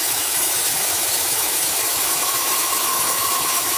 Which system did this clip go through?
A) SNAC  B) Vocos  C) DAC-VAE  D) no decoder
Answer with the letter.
C